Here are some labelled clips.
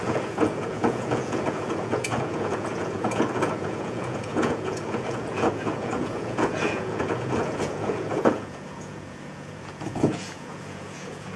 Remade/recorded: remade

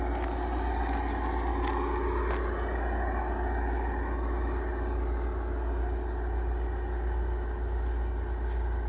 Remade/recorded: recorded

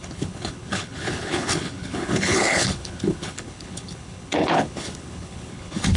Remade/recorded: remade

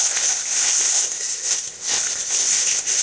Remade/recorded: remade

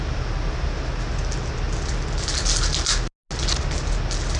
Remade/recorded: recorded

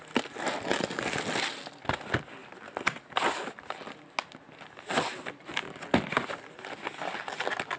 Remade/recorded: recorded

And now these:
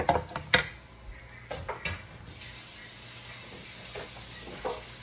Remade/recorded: recorded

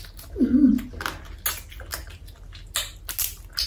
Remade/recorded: recorded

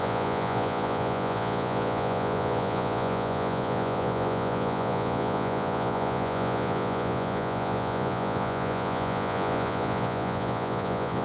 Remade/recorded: remade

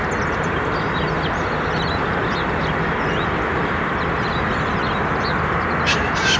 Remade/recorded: recorded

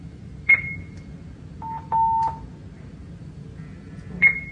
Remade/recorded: recorded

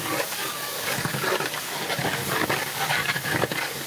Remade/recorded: remade